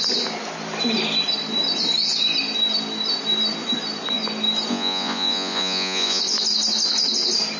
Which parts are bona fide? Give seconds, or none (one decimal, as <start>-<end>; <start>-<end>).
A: 0.0-4.7; 6.2-7.6